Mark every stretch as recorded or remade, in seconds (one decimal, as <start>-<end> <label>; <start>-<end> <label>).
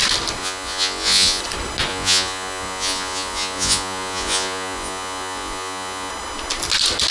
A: 0.0-0.4 recorded; 0.4-1.4 remade; 1.4-1.9 recorded; 1.9-6.1 remade; 6.1-7.1 recorded